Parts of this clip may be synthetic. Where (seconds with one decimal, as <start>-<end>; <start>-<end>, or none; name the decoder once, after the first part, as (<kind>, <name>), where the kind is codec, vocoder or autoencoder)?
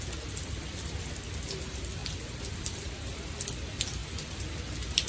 none